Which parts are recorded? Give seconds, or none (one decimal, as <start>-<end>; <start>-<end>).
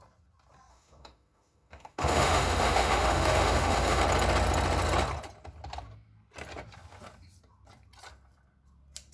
0.0-0.7; 4.0-9.1